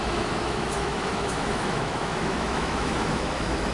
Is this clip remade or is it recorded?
remade